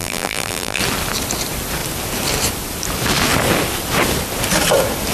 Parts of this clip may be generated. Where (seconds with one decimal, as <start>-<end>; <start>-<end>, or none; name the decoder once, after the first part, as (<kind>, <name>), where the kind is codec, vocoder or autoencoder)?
0.0-0.8 (vocoder, BigVGAN v2)